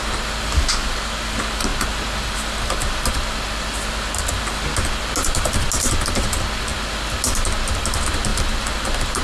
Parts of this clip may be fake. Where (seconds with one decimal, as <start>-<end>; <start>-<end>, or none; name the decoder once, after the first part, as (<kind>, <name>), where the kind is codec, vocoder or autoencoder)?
none